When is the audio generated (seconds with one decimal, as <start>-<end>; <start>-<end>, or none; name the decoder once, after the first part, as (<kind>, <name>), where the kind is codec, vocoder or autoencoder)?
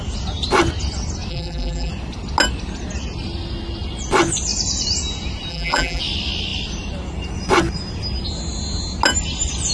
1.3-1.9 (vocoder, BigVGAN v2); 5.5-6.0